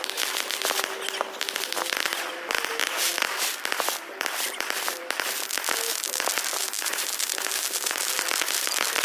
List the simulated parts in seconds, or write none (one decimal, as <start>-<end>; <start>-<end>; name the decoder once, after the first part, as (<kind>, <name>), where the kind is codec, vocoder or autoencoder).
6.5-8.1 (vocoder, BigVGAN v2)